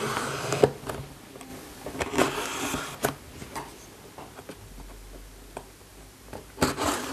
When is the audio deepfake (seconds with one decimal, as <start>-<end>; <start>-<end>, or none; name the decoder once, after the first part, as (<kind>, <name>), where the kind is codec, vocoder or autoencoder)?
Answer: 2.5-3.1 (vocoder, BigVGAN v2); 5.9-7.1